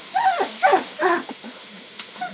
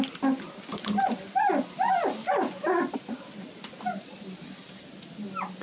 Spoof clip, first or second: first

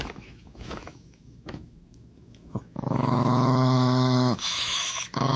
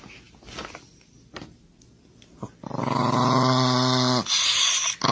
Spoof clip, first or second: first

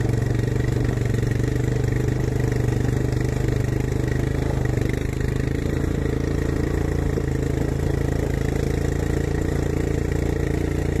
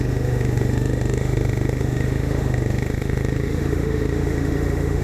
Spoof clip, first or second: second